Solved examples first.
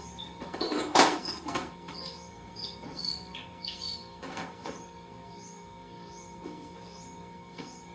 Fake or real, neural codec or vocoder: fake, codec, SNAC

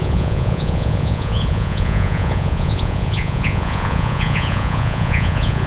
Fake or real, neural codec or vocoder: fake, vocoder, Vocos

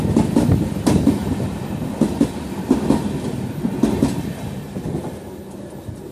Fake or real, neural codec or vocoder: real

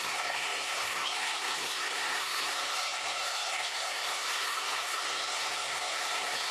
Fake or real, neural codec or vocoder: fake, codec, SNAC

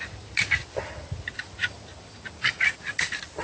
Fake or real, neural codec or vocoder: real